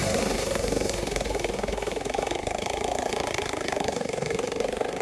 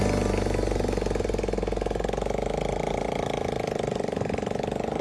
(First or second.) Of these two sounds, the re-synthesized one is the first